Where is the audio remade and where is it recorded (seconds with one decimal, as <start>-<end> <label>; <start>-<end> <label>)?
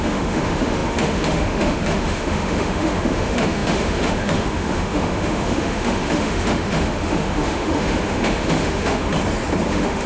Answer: 0.0-9.1 remade; 9.1-9.7 recorded; 9.7-10.1 remade